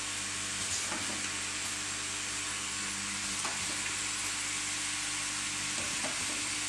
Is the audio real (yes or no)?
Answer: yes